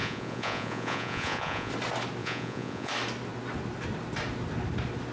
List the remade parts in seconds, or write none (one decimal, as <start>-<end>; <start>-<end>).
0.0-1.7; 2.2-2.9